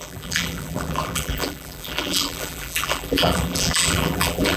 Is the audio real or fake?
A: fake